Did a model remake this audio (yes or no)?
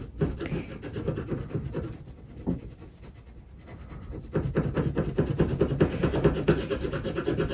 no